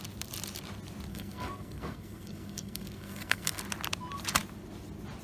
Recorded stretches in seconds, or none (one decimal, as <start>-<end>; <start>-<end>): 0.0-1.1; 3.6-5.2